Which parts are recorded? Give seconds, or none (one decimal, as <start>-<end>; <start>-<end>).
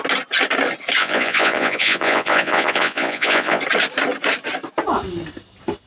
0.0-1.0; 3.6-5.9